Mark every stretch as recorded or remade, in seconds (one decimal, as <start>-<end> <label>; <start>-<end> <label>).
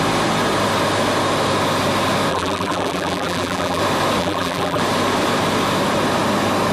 0.0-2.3 recorded; 2.3-3.8 remade; 3.8-4.2 recorded; 4.2-4.8 remade; 4.8-6.7 recorded